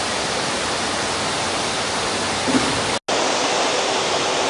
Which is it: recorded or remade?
recorded